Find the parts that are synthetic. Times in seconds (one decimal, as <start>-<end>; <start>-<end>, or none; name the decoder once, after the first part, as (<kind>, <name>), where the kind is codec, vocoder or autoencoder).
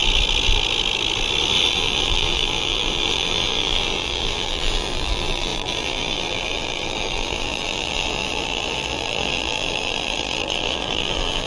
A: 1.7-11.5 (vocoder, BigVGAN v2)